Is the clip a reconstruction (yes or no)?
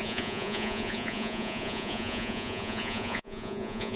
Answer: yes